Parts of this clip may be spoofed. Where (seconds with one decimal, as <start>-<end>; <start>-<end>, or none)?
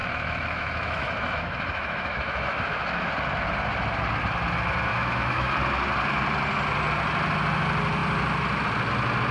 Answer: 0.0-3.1; 4.9-5.5